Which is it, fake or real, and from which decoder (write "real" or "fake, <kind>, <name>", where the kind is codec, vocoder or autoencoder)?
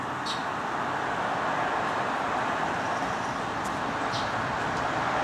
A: fake, vocoder, BigVGAN v2